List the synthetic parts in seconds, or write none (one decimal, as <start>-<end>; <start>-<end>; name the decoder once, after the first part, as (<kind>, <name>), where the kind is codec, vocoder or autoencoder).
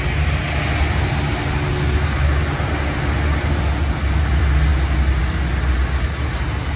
none